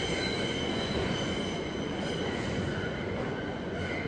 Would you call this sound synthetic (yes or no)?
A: yes